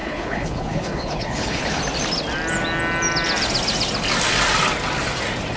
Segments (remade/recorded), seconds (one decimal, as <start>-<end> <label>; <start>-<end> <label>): 0.0-1.8 remade; 1.8-5.6 recorded